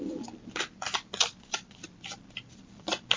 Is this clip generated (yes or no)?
yes